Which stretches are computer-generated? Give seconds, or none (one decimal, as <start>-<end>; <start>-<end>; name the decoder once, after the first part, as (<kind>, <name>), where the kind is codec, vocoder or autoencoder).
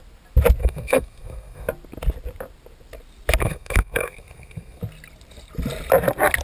0.6-1.7 (codec, SNAC); 3.4-4.8